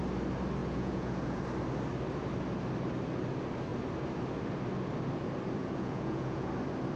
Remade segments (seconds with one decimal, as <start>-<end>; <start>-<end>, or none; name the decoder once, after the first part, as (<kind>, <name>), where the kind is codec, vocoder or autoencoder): 0.6-1.4 (vocoder, Vocos); 5.6-6.5